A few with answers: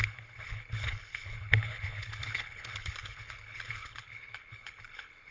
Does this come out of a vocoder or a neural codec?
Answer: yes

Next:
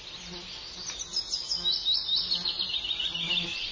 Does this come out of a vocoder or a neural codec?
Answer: no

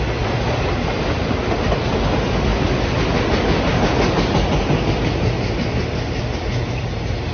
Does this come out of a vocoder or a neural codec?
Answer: no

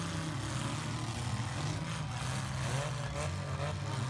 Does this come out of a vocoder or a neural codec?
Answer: no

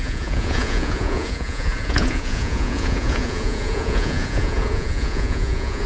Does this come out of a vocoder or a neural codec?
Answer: yes